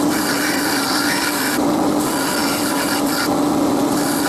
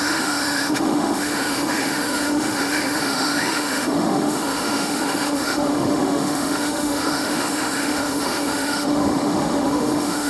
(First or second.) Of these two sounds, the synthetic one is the second